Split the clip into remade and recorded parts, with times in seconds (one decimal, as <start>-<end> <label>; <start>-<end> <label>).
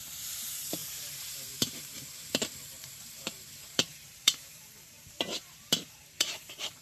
0.0-6.8 remade